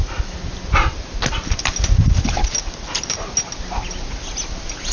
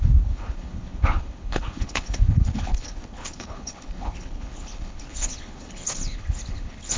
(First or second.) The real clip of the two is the first